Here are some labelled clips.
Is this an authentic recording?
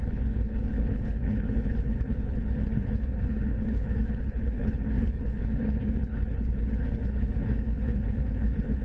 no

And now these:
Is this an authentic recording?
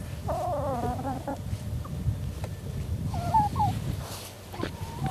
no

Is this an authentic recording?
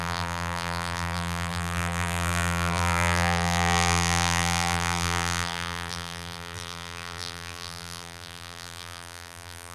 no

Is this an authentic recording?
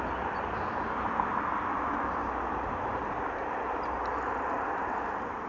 yes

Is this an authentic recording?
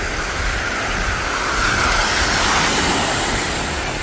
yes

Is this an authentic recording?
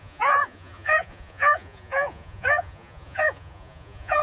no